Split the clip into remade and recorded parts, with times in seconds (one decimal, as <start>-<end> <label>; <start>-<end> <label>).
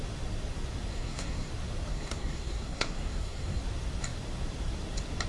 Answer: 0.0-0.9 recorded; 0.9-1.5 remade; 1.5-1.9 recorded; 1.9-3.6 remade; 3.6-5.3 recorded